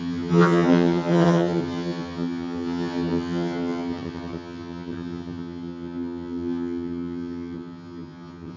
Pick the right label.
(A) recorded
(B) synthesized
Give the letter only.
B